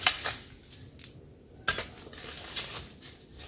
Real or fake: real